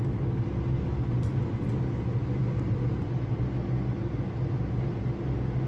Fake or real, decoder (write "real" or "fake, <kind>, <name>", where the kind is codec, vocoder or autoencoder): real